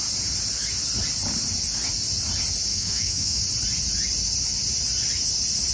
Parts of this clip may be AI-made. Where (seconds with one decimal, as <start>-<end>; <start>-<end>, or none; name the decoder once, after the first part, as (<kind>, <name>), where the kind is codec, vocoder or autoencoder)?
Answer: 2.7-3.4 (autoencoder, DAC-VAE)